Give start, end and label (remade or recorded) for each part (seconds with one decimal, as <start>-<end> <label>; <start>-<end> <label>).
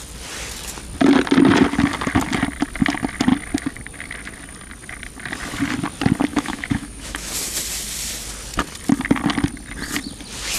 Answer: 0.0-6.3 recorded; 6.3-7.3 remade; 7.3-10.6 recorded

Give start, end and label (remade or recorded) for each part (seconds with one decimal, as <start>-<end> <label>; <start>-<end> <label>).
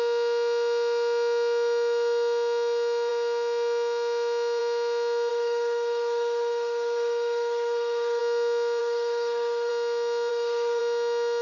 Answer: 0.0-5.3 recorded; 5.3-8.2 remade; 8.2-8.8 recorded; 8.8-9.7 remade; 9.7-10.3 recorded; 10.3-10.8 remade; 10.8-11.4 recorded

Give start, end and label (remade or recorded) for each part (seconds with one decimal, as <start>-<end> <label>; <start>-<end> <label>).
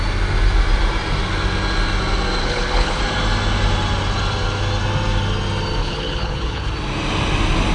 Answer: 0.0-2.4 recorded; 2.4-3.0 remade; 3.0-5.8 recorded; 5.8-6.7 remade; 6.7-7.7 recorded